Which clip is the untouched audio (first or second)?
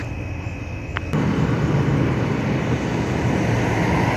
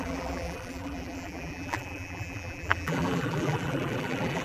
first